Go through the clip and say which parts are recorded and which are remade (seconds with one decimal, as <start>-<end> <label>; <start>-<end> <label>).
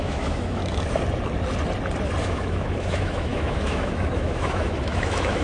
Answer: 0.0-0.6 remade; 0.6-2.2 recorded; 2.2-5.4 remade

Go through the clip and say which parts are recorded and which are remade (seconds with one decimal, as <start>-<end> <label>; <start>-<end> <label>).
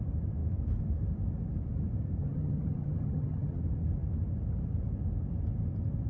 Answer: 0.0-2.2 recorded; 2.2-3.6 remade; 3.6-6.1 recorded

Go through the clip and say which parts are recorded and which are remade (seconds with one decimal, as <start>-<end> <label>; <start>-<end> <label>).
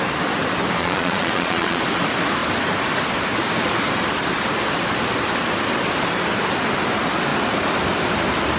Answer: 0.0-0.8 recorded; 0.8-1.8 remade; 1.8-8.6 recorded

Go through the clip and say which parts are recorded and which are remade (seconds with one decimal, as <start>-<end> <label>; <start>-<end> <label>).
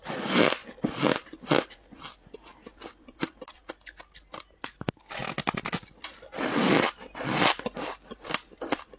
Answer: 0.0-9.0 recorded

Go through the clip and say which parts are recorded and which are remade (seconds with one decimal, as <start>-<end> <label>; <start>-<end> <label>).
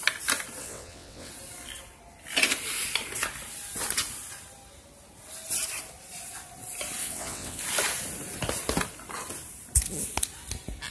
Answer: 0.0-0.6 recorded; 0.6-1.3 remade; 1.3-7.0 recorded; 7.0-7.6 remade; 7.6-10.9 recorded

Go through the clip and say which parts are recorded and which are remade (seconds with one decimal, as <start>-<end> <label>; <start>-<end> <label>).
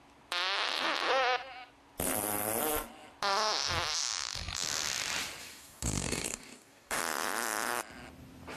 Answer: 0.0-5.4 recorded; 5.4-7.0 remade; 7.0-8.6 recorded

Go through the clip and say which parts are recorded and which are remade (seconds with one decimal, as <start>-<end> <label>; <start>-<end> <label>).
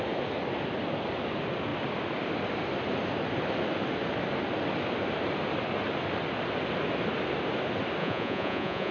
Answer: 0.0-8.0 recorded; 8.0-8.9 remade